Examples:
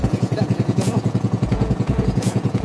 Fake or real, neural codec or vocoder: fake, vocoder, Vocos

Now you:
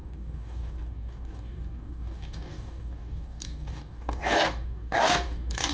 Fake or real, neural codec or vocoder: fake, codec, DAC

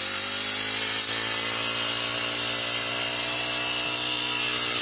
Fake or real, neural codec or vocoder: real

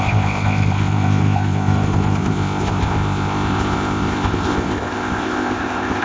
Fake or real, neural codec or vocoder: fake, codec, ZipCodec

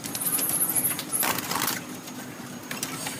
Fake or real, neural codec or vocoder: real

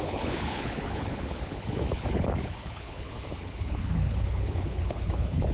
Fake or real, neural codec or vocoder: fake, codec, HILCodec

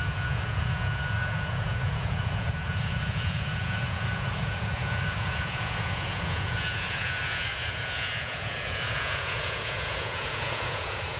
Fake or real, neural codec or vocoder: fake, vocoder, Vocos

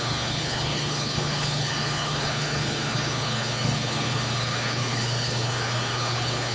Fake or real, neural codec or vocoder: fake, codec, HILCodec